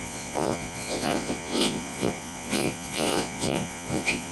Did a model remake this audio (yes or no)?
yes